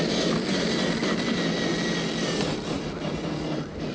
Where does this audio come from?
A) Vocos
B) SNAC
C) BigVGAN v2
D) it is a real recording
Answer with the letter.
D